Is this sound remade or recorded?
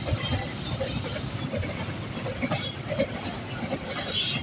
recorded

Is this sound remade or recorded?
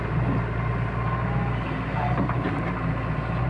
recorded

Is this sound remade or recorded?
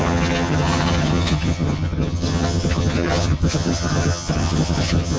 remade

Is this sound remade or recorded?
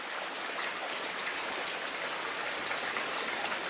remade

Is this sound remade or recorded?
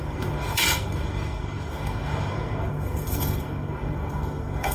remade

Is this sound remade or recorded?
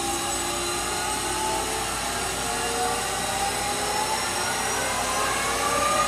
recorded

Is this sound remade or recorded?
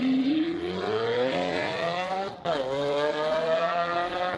remade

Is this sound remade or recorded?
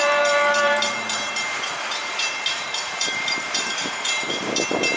remade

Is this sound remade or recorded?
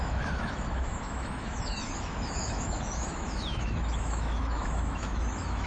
remade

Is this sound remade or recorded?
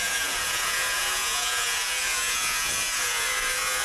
remade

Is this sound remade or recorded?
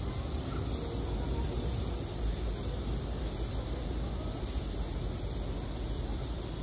recorded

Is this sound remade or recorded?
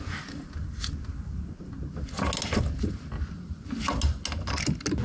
recorded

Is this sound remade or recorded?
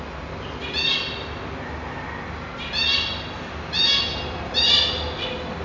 recorded